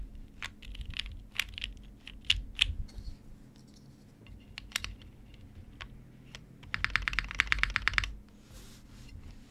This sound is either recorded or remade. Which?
recorded